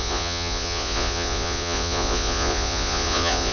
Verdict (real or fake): fake